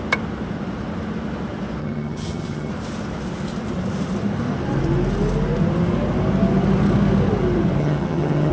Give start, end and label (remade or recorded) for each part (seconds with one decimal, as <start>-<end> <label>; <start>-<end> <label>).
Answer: 0.0-1.8 recorded; 1.8-2.7 remade; 2.7-7.8 recorded; 7.8-8.5 remade